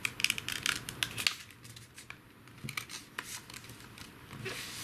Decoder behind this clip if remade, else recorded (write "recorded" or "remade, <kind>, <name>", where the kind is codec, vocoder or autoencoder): recorded